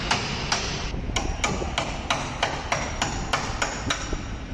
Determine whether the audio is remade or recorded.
recorded